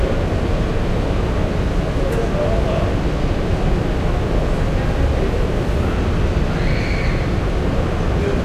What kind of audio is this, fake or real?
real